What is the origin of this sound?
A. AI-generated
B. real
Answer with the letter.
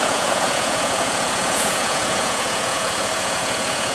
A